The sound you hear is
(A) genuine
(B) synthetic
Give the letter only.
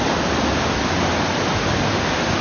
A